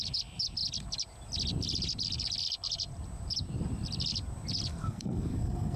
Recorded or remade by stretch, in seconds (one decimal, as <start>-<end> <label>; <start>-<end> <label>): 0.0-4.7 recorded; 4.7-5.8 remade